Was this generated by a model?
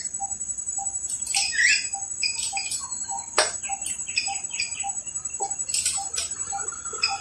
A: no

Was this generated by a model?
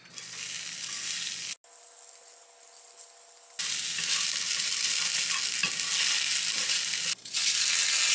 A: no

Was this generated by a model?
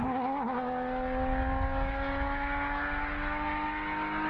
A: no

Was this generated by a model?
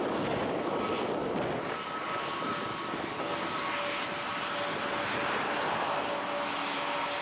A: no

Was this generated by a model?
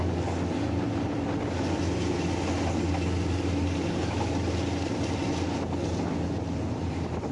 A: no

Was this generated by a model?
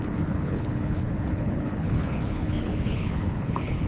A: yes